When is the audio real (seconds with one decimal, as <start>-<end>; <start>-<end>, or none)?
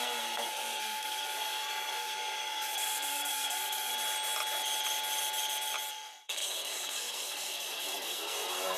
3.9-5.9